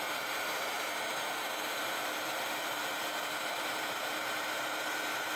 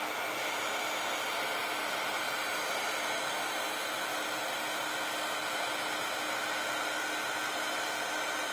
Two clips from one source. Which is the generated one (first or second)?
first